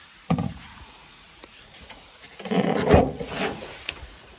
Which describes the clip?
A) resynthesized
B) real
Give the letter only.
A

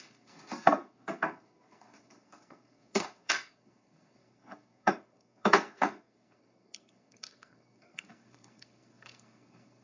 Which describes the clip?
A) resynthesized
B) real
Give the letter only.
A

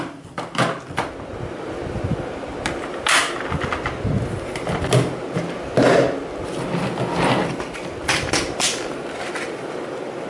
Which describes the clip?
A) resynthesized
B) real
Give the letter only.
B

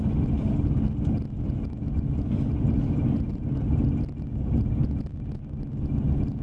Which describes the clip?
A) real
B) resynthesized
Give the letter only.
A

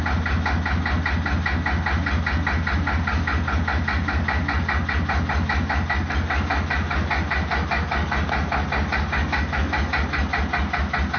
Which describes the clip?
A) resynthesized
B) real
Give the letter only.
B